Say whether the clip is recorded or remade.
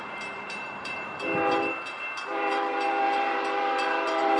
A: remade